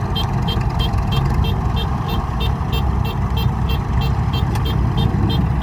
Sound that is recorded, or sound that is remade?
recorded